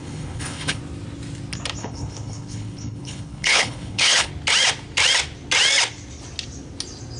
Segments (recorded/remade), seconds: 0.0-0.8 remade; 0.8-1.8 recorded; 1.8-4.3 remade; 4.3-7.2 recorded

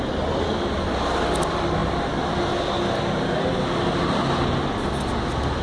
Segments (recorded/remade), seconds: 0.0-5.6 recorded